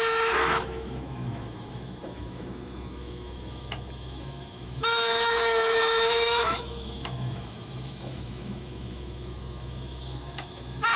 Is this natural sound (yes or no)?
no